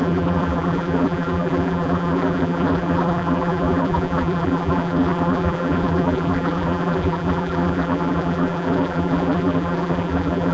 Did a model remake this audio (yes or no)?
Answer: yes